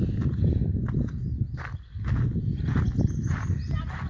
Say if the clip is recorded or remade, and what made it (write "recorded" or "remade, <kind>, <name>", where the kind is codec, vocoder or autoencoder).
recorded